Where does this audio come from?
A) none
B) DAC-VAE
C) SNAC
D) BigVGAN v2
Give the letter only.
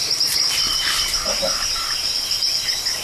D